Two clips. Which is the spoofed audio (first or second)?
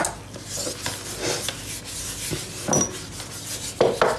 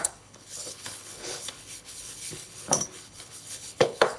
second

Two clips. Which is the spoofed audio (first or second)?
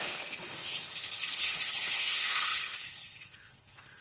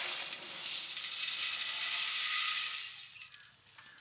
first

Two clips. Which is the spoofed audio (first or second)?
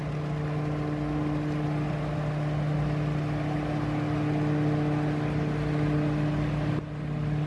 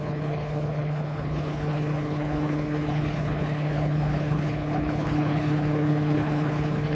second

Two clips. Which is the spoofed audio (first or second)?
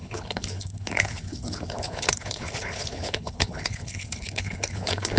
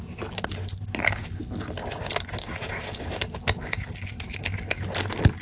first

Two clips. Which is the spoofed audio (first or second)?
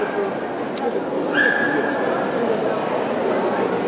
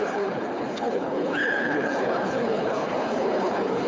second